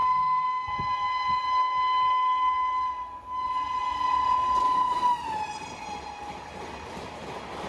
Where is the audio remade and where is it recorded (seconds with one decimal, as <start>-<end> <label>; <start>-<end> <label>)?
0.0-0.7 remade; 0.7-7.7 recorded